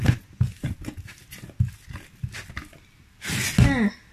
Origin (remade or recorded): recorded